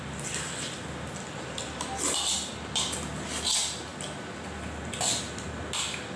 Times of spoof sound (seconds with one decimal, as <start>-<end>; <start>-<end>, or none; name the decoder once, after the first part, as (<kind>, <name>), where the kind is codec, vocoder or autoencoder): none